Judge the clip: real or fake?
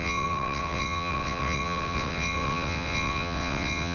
fake